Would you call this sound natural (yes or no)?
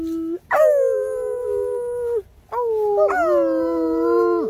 yes